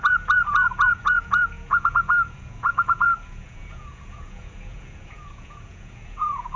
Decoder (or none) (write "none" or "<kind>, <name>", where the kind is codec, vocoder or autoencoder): vocoder, Vocos